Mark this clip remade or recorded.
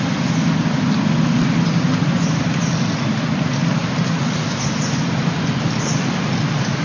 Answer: recorded